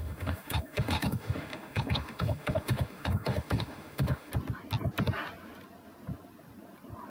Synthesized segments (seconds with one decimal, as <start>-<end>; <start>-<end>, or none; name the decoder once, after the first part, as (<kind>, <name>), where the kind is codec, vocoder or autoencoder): 0.0-4.3 (autoencoder, DAC-VAE)